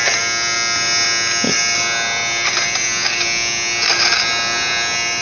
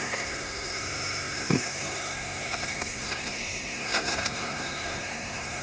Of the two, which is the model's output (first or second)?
second